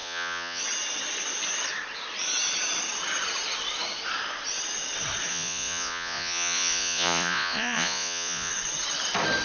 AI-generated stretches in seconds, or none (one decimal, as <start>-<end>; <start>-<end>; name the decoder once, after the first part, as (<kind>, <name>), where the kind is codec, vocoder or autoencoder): 0.0-0.6 (vocoder, Vocos); 5.3-8.5